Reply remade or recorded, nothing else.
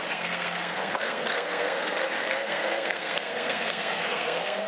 remade